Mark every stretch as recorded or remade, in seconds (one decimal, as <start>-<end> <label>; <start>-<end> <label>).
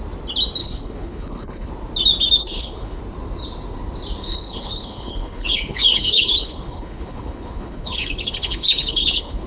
0.0-0.6 recorded; 0.6-1.7 remade; 1.7-2.4 recorded; 2.4-3.0 remade; 3.0-4.2 recorded; 4.2-9.5 remade